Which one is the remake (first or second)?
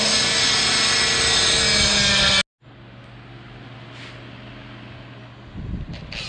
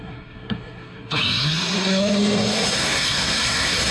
second